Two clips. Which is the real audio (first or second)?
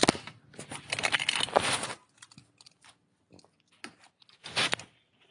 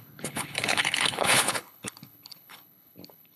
first